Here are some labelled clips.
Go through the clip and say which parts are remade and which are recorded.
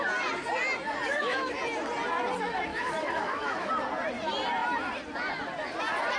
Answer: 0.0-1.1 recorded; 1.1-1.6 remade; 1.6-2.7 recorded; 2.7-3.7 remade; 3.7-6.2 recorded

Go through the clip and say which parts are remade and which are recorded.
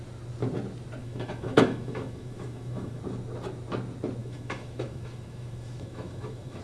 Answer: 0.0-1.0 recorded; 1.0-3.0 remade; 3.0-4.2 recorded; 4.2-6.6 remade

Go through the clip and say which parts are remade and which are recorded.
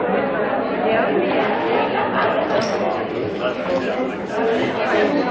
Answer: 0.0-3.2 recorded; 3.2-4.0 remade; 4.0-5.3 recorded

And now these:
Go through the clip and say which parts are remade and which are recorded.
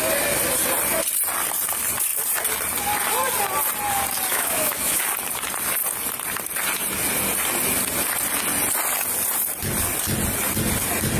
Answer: 0.0-4.3 recorded; 4.3-5.0 remade; 5.0-11.2 recorded